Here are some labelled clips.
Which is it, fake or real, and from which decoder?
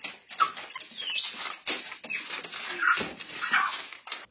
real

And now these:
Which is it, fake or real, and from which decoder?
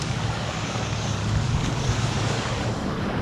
fake, codec, DAC